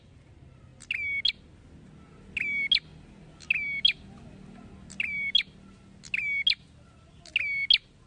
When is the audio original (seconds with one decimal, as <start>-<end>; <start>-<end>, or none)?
0.0-8.1